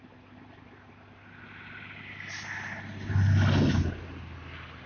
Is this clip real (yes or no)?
yes